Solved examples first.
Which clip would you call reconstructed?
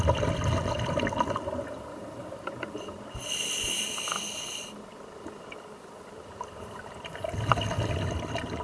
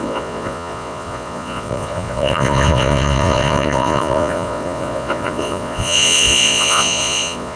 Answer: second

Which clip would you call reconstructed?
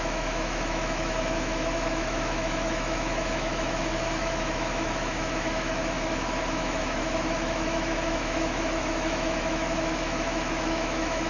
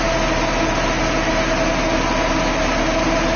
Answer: first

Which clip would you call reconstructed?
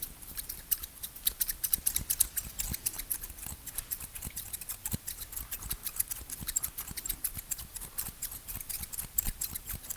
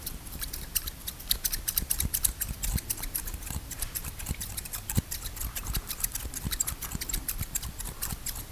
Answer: second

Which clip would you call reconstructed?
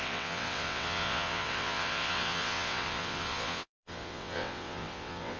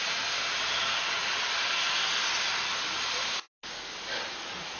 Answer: first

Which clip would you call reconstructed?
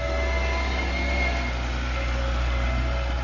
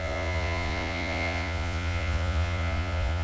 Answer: second